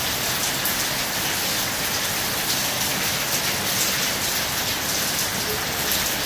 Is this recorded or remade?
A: recorded